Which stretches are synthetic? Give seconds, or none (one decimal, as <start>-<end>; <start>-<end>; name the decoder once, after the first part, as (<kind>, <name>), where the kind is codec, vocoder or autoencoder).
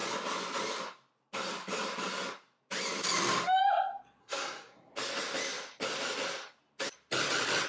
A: 4.2-4.9 (codec, SNAC)